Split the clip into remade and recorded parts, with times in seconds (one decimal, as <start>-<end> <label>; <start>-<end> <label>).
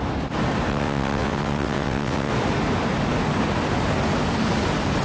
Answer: 0.0-0.7 recorded; 0.7-2.3 remade; 2.3-5.0 recorded